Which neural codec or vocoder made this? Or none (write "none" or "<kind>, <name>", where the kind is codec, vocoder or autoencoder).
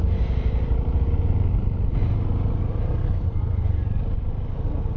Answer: none